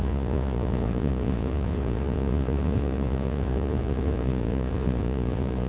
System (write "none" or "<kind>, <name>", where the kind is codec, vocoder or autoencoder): vocoder, Vocos